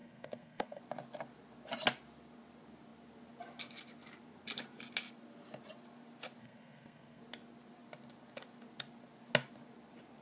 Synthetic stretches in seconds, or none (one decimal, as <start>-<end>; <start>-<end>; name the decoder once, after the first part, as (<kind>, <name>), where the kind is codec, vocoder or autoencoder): 0.0-0.8 (codec, SNAC); 6.4-7.2